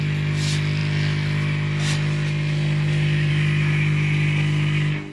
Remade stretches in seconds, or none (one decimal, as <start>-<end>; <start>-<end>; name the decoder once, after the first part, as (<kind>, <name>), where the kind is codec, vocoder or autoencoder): none